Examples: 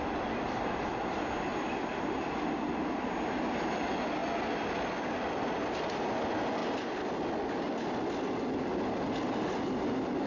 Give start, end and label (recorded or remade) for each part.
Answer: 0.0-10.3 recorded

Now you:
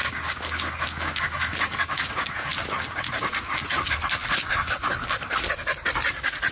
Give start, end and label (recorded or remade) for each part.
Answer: 0.0-3.0 remade; 3.0-6.5 recorded

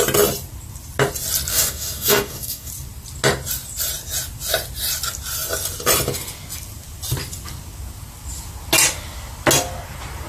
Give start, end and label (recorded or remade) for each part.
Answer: 0.0-1.5 recorded; 1.5-2.7 remade; 2.7-10.3 recorded